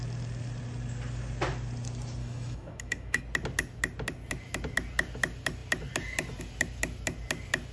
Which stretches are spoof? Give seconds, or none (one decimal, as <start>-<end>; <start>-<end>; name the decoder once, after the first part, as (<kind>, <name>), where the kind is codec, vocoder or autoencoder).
2.2-3.2 (autoencoder, DAC-VAE)